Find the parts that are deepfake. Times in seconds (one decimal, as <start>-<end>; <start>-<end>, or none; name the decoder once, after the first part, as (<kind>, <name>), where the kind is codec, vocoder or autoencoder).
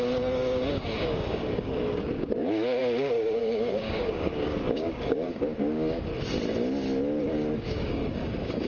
0.0-6.1 (codec, DAC); 7.2-8.7